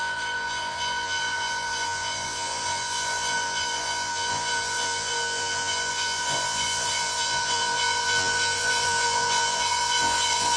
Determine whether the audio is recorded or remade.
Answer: remade